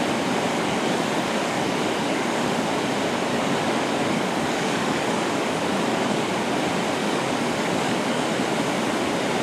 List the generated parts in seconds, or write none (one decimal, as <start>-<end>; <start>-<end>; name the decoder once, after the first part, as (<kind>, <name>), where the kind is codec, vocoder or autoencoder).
0.5-2.7 (codec, DAC); 3.3-6.3; 7.0-8.3